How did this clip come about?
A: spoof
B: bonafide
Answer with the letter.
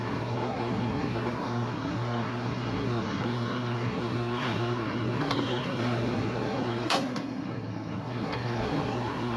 A